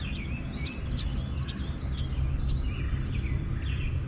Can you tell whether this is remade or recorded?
recorded